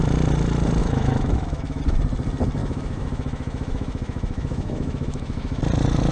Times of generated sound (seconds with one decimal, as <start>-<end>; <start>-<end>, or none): 0.8-1.8; 2.6-5.6

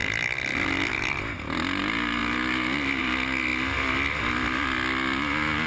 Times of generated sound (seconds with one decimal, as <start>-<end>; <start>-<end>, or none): none